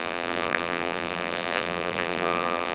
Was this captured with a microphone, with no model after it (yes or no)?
no